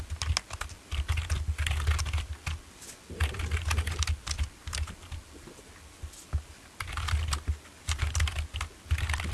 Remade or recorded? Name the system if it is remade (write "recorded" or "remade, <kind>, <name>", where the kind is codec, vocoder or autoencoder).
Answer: recorded